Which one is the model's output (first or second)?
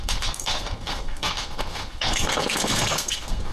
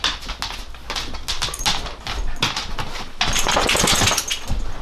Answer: first